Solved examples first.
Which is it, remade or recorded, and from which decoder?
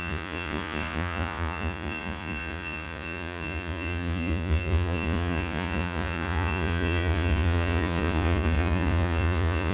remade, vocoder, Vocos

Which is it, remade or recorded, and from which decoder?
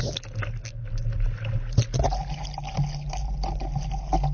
recorded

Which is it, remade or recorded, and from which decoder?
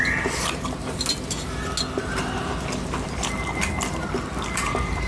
recorded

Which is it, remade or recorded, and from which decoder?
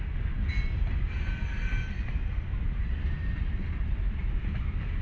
recorded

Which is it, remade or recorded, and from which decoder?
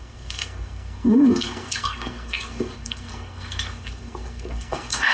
remade, codec, SNAC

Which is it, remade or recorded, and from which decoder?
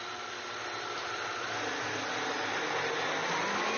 recorded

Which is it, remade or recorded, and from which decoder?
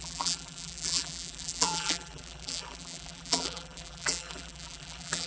remade, vocoder, BigVGAN v2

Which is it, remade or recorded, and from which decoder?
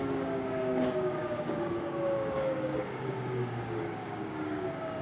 remade, codec, DAC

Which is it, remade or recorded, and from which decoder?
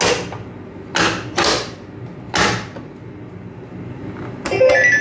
recorded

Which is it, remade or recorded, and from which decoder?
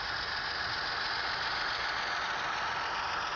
recorded